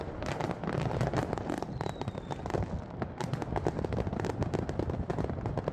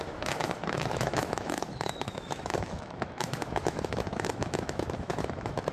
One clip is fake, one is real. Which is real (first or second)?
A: first